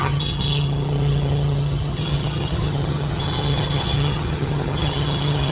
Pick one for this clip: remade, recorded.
remade